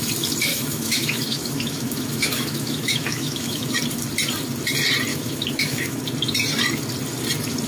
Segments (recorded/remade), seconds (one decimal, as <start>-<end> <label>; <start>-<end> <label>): 0.0-0.5 recorded; 0.5-3.8 remade; 3.8-5.1 recorded; 5.1-6.0 remade; 6.0-7.7 recorded